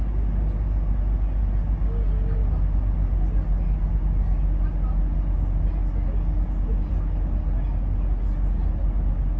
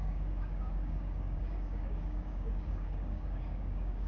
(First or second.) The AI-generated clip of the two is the second